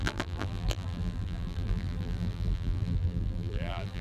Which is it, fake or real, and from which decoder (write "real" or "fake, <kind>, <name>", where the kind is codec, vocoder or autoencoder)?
fake, vocoder, BigVGAN v2